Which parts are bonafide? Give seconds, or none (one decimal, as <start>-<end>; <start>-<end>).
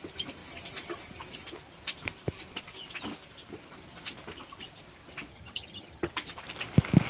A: 0.0-5.3; 6.1-7.1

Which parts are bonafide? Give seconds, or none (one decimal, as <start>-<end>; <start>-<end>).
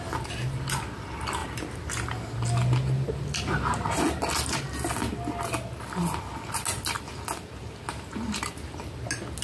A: 0.0-9.4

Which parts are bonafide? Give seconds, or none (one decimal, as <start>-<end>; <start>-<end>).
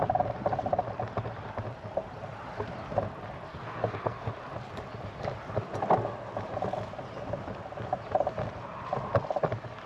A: 0.0-3.5; 4.3-9.9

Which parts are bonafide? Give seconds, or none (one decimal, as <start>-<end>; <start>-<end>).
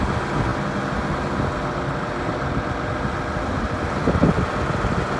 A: 0.0-5.2